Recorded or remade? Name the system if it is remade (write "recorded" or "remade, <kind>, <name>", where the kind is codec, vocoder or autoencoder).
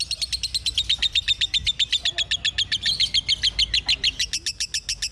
recorded